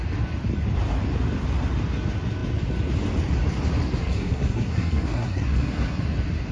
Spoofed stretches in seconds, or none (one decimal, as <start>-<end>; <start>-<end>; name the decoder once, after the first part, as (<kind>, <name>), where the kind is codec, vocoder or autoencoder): 4.0-6.0 (codec, SNAC)